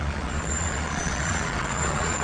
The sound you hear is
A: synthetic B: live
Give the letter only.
A